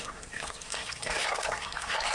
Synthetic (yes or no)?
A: yes